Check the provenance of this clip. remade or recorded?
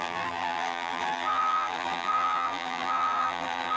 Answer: remade